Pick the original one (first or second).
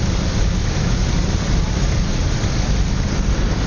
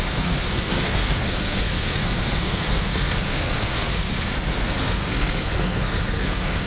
first